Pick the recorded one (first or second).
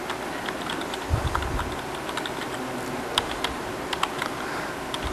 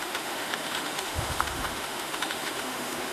first